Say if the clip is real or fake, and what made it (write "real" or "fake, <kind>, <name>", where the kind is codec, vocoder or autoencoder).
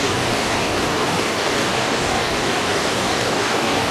fake, codec, DAC